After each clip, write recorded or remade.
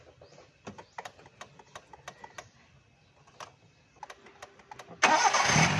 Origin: recorded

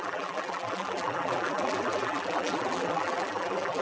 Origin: remade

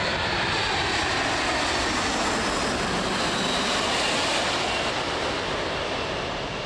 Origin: recorded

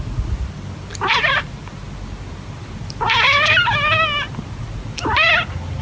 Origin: recorded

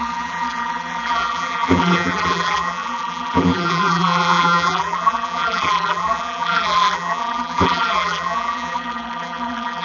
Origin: remade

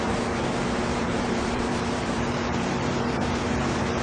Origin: remade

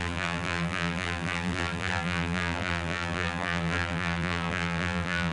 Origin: remade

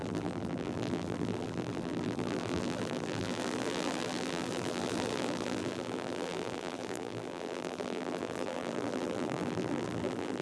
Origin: remade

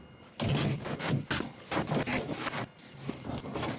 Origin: recorded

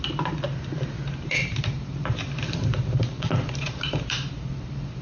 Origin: remade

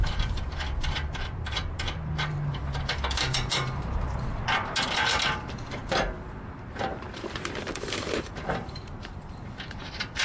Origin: remade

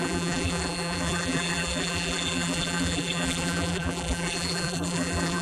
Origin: remade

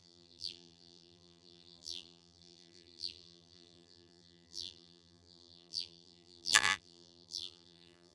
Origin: remade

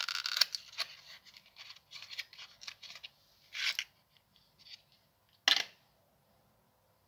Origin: recorded